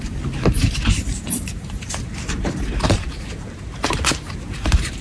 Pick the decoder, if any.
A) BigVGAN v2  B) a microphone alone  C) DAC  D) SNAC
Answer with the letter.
A